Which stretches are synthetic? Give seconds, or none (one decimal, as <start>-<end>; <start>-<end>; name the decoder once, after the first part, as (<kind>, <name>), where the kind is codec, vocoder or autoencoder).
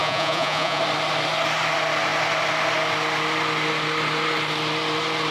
0.0-0.8 (vocoder, Vocos)